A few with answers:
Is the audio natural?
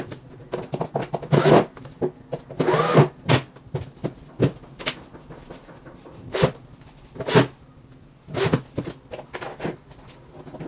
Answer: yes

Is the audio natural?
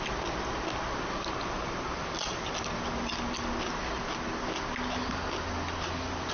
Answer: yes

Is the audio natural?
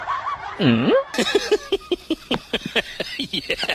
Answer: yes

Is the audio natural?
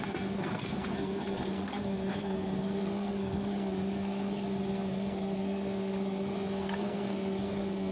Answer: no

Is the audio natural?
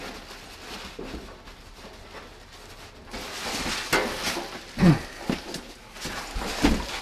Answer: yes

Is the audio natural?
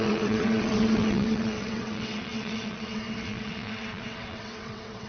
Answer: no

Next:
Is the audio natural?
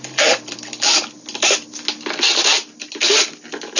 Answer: yes